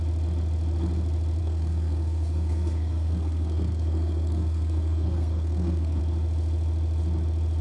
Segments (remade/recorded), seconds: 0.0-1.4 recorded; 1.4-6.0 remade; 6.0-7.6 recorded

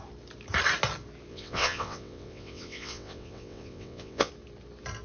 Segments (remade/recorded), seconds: 0.0-1.3 recorded; 1.3-4.3 remade; 4.3-5.0 recorded

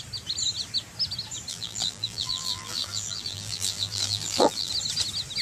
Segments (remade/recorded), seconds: 0.0-1.5 recorded; 1.5-4.7 remade; 4.7-5.4 recorded

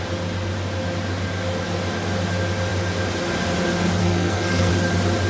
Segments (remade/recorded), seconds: 0.0-4.0 recorded; 4.0-4.7 remade; 4.7-5.3 recorded

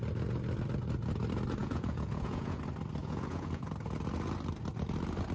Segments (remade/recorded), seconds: 0.0-1.6 recorded; 1.6-2.6 remade; 2.6-3.0 recorded; 3.0-3.7 remade; 3.7-5.3 recorded

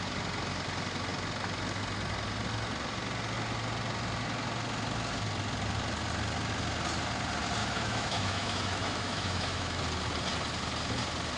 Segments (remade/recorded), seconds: 0.0-7.6 recorded; 7.6-9.8 remade; 9.8-11.4 recorded

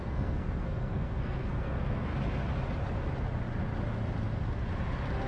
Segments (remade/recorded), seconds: 0.0-2.1 remade; 2.1-5.3 recorded

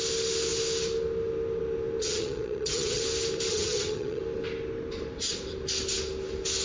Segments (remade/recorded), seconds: 0.0-2.0 recorded; 2.0-3.0 remade; 3.0-3.5 recorded; 3.5-4.2 remade; 4.2-6.6 recorded